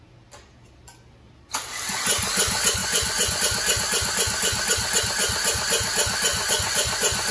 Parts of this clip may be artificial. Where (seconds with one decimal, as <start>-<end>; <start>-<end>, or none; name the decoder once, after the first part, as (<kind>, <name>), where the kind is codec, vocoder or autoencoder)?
2.8-3.4 (vocoder, Vocos); 6.3-7.3